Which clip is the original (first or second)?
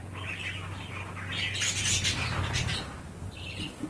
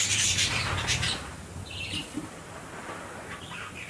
first